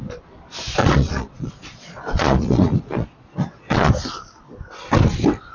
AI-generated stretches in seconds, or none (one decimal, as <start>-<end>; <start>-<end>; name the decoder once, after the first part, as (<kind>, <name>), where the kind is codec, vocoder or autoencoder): 0.8-3.9 (vocoder, Vocos)